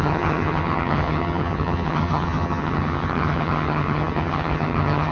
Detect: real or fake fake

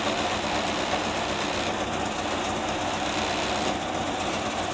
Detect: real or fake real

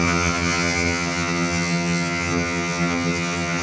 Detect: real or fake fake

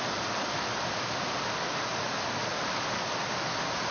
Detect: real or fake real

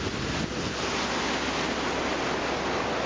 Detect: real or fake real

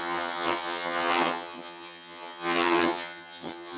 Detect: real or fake fake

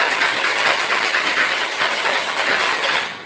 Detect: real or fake fake